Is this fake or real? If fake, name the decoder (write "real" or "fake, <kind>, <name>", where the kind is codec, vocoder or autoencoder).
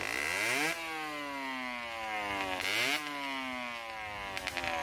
real